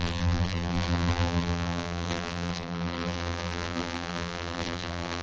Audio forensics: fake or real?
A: fake